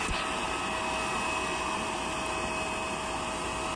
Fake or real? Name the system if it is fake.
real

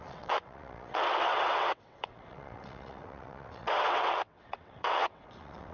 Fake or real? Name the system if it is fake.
fake, vocoder, WaveNeXt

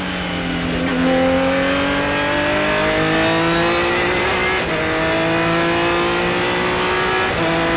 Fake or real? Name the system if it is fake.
real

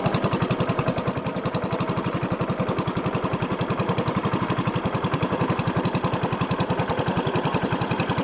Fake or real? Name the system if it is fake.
real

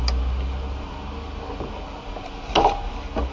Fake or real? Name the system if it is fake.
real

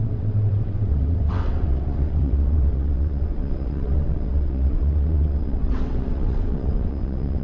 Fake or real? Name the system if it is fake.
fake, vocoder, WaveNeXt